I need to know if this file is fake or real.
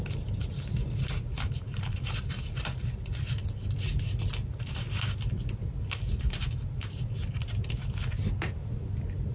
real